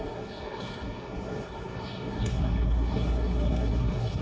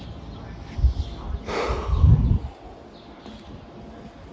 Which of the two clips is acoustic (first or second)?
second